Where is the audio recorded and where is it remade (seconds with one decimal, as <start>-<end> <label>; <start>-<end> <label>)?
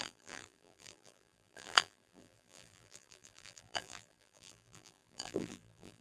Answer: 0.0-6.0 remade